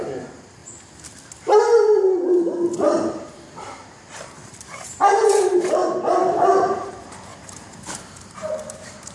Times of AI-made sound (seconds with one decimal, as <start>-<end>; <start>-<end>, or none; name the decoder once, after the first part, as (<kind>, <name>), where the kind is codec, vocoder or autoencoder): 0.0-0.6 (vocoder, BigVGAN v2); 3.1-5.8; 6.3-9.1